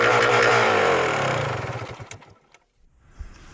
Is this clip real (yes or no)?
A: no